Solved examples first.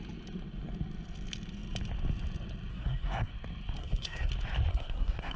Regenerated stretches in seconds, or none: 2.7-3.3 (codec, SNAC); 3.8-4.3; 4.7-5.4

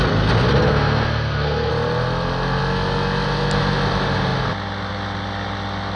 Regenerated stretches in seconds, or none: 0.5-1.7 (codec, SNAC)

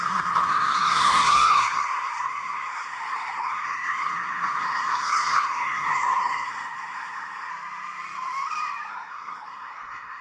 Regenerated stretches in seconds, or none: 0.0-7.5 (codec, SNAC); 8.9-10.2

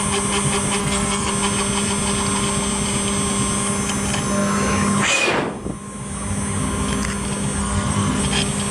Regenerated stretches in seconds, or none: 0.8-1.3 (codec, SNAC); 7.6-8.2